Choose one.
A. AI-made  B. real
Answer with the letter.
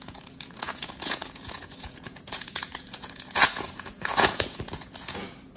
A